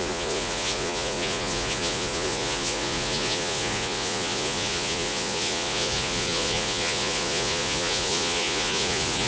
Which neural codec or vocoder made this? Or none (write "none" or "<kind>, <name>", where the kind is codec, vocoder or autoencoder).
vocoder, Vocos